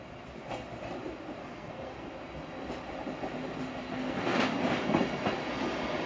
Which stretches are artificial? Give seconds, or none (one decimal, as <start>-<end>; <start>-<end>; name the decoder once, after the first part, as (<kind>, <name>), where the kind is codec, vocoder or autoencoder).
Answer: 1.4-2.1 (codec, SNAC); 3.9-4.4